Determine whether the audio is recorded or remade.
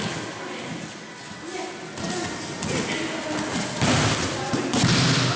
recorded